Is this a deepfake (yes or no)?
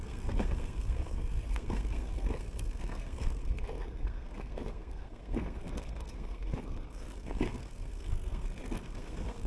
yes